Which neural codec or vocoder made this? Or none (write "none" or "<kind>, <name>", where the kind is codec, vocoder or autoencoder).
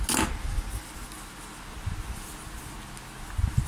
none